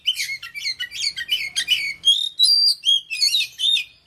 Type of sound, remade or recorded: remade